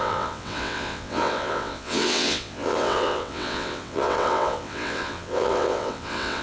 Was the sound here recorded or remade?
remade